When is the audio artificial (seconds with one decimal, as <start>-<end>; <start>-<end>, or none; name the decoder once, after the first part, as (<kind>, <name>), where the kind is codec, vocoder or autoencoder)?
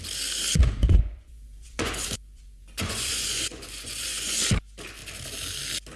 0.8-4.4 (vocoder, Vocos)